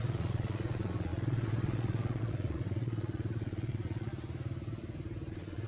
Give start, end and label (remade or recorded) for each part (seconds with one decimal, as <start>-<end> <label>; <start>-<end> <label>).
0.0-4.1 remade; 4.1-5.3 recorded; 5.3-5.7 remade